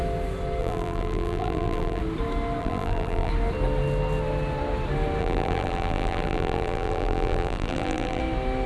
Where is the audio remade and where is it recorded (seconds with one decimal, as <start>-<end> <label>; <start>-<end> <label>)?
0.0-0.6 recorded; 0.6-2.0 remade; 2.0-2.6 recorded; 2.6-3.3 remade; 3.3-5.2 recorded; 5.2-8.2 remade; 8.2-8.7 recorded